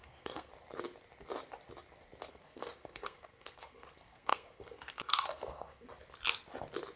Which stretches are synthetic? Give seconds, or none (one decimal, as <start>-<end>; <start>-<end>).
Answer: 0.0-0.5; 2.3-5.9

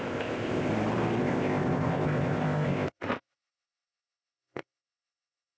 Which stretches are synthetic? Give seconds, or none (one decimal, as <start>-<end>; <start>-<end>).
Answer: 0.0-0.7; 1.2-5.6

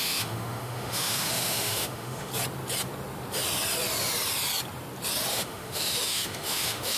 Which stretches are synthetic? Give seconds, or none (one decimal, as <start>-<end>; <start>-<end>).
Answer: 0.0-2.3; 5.3-7.0

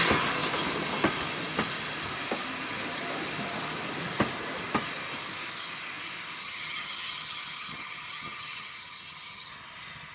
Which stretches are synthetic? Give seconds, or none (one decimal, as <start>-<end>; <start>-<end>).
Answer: 6.4-9.5